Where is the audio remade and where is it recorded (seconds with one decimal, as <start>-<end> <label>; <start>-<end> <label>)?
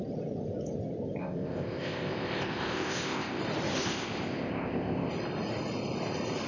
0.0-1.2 recorded; 1.2-3.4 remade; 3.4-3.8 recorded; 3.8-5.1 remade; 5.1-6.5 recorded